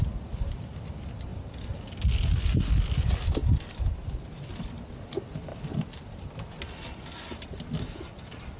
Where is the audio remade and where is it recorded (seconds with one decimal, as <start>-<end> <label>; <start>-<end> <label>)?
0.0-5.5 recorded; 5.5-6.5 remade; 6.5-8.6 recorded